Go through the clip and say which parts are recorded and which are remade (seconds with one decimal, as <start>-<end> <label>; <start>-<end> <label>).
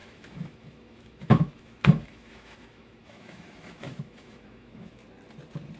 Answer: 0.0-5.0 remade; 5.0-5.8 recorded